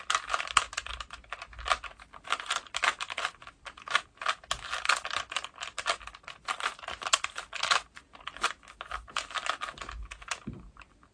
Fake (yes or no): no